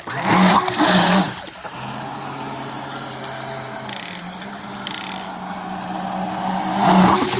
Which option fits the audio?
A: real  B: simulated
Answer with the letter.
A